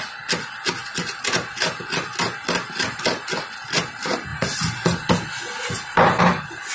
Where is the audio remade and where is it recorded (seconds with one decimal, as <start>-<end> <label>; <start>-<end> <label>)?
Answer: 0.0-6.7 recorded